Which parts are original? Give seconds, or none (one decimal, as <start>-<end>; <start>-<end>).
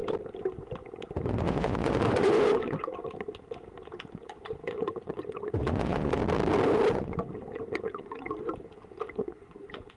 0.0-1.1; 3.0-4.2; 6.2-6.9; 8.5-9.0